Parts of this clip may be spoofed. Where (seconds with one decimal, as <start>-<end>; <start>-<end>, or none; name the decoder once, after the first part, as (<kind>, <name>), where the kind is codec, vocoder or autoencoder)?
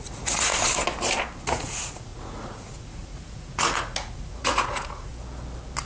0.0-0.5 (vocoder, Vocos); 1.4-5.1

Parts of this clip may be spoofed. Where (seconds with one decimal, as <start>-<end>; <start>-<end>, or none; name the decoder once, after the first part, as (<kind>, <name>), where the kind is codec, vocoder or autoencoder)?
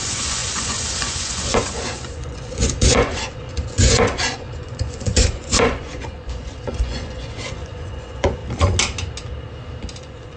0.0-8.4 (vocoder, Vocos); 10.0-10.4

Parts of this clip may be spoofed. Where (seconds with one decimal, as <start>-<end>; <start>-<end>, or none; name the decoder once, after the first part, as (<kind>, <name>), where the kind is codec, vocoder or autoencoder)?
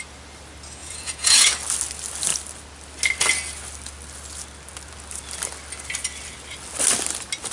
0.8-1.5 (vocoder, Vocos)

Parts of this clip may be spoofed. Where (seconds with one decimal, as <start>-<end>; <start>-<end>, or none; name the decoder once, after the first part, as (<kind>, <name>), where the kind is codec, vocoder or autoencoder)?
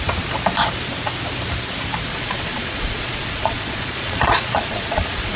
2.1-5.4 (vocoder, Vocos)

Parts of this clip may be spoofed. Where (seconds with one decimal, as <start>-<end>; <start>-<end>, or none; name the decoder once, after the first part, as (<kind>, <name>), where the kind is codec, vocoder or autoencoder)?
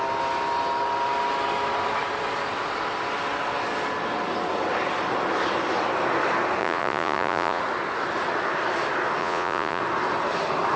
6.6-7.6 (vocoder, Vocos); 9.2-9.8